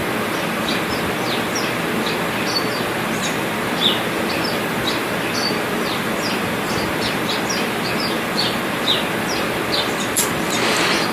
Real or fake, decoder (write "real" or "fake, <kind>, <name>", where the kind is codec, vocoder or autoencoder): fake, vocoder, BigVGAN v2